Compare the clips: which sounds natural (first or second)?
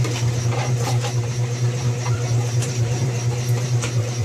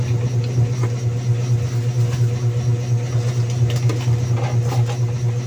second